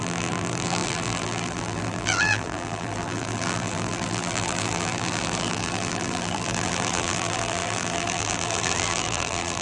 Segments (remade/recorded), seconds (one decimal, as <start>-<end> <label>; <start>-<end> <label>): 0.0-9.6 remade